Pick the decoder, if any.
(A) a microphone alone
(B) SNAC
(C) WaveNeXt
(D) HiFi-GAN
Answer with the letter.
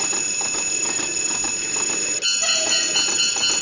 A